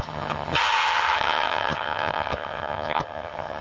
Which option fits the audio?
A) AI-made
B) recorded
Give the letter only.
A